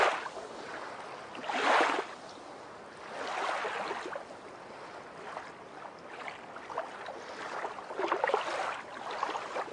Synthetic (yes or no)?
no